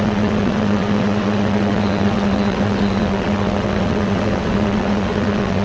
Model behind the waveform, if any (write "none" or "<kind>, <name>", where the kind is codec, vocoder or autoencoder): vocoder, WaveNeXt